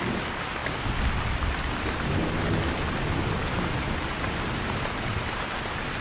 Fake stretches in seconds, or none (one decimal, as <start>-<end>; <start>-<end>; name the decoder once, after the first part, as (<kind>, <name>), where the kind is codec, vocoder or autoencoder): none